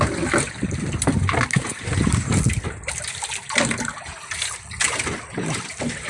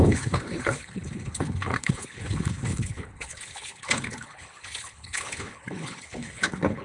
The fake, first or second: second